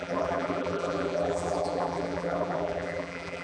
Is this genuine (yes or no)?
no